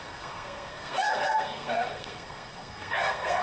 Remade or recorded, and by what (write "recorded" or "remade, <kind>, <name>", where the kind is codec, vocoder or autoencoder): remade, codec, SNAC